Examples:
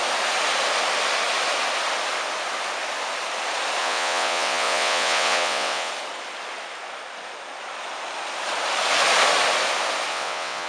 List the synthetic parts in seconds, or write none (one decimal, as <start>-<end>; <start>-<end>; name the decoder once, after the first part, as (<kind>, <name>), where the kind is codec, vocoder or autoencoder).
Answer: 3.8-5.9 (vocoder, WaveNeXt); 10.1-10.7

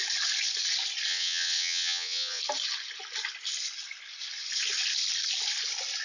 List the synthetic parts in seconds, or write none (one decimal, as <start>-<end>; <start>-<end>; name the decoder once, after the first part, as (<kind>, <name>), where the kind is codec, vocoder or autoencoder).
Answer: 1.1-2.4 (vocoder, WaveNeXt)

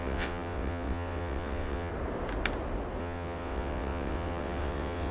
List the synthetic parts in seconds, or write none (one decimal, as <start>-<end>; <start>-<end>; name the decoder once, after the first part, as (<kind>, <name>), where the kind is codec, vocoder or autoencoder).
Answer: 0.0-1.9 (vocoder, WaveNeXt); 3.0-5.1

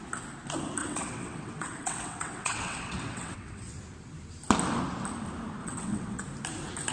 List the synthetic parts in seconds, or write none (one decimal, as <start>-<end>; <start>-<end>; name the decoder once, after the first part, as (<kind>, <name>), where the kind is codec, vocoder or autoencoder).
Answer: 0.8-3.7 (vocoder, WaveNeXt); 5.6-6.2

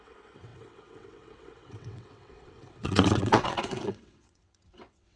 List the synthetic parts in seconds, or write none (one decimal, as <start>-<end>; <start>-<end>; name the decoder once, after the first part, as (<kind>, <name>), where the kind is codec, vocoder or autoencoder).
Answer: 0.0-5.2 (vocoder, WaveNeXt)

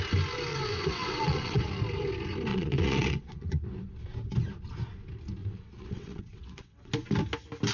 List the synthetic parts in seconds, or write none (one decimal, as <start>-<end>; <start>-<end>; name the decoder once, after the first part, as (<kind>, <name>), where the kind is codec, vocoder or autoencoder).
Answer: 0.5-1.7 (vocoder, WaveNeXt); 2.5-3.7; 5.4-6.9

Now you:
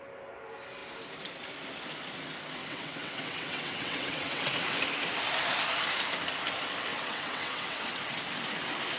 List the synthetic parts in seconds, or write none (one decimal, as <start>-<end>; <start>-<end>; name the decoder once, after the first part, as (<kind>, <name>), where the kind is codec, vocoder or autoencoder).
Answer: 2.6-4.5 (vocoder, WaveNeXt); 6.9-8.1

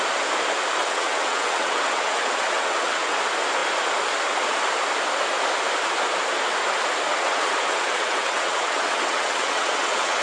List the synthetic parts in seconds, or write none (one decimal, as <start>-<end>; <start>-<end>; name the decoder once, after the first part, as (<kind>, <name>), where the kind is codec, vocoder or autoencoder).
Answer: 0.8-3.2 (vocoder, WaveNeXt); 7.1-10.2